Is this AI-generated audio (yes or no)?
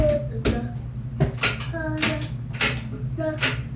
no